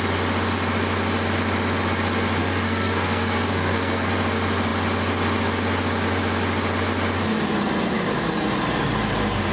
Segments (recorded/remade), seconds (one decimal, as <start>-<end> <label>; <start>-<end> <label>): 0.0-2.4 recorded; 2.4-4.1 remade; 4.1-9.5 recorded

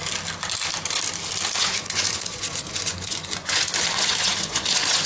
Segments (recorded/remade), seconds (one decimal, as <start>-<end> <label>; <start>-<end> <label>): 0.0-1.6 recorded; 1.6-5.1 remade

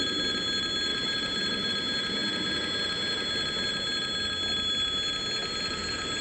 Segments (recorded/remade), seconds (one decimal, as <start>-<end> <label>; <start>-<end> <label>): 0.0-0.9 recorded; 0.9-1.7 remade; 1.7-5.4 recorded; 5.4-6.2 remade

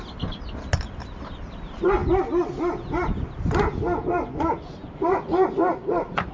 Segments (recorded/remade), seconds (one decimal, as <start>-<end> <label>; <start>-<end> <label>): 0.0-6.3 recorded

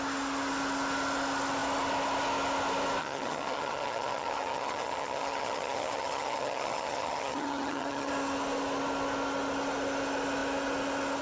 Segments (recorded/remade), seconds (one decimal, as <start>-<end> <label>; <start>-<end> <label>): 0.0-3.0 recorded; 3.0-8.1 remade; 8.1-11.2 recorded

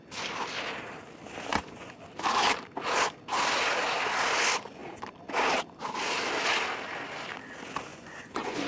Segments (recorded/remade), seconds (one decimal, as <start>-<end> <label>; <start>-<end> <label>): 0.0-1.5 recorded; 1.5-2.0 remade; 2.0-7.9 recorded; 7.9-8.7 remade